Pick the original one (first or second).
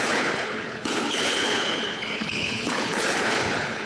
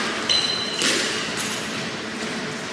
second